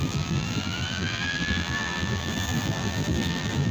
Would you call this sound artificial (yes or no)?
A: yes